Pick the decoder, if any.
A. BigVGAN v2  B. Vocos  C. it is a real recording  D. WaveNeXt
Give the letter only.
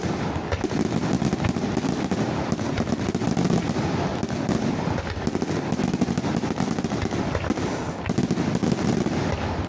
C